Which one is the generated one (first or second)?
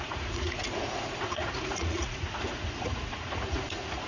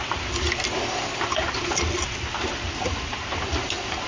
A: first